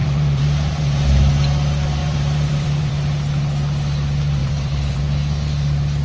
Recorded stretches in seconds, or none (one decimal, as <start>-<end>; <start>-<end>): 1.3-2.0; 2.9-4.4; 5.0-6.0